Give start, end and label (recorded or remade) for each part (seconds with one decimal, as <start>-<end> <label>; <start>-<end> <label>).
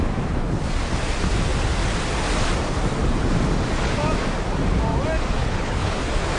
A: 0.0-5.4 recorded; 5.4-6.0 remade; 6.0-6.4 recorded